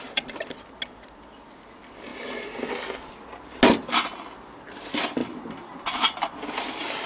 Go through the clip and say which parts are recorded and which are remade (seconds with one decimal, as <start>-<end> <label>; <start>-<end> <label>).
0.0-5.2 recorded; 5.2-6.2 remade; 6.2-7.1 recorded